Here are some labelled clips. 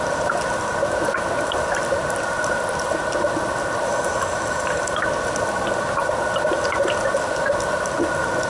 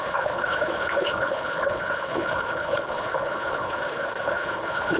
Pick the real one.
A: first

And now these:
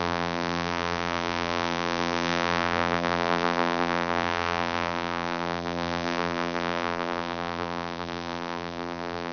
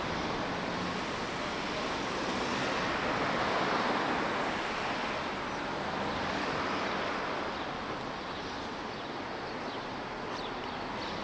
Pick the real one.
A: second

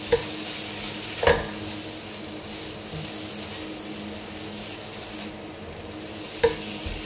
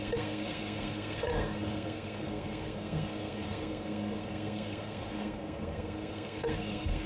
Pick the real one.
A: first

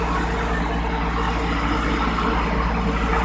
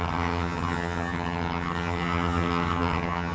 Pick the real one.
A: first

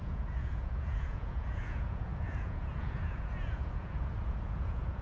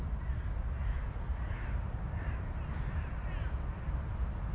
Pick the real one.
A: second